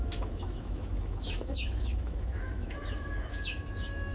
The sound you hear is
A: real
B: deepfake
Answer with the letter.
B